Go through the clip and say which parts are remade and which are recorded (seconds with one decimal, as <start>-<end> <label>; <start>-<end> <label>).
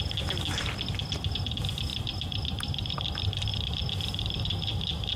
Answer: 0.0-5.2 recorded